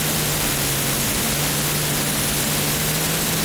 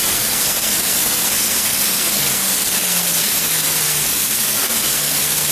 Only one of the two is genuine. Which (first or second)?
first